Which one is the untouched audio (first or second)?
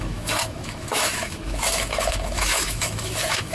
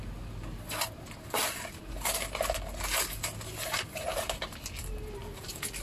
second